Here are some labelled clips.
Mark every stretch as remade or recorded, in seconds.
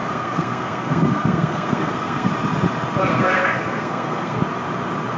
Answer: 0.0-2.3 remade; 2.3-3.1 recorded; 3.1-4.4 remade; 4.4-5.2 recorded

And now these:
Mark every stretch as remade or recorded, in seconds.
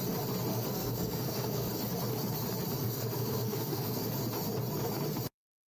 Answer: 0.0-0.5 recorded; 0.5-1.7 remade; 1.7-2.8 recorded; 2.8-4.0 remade; 4.0-5.7 recorded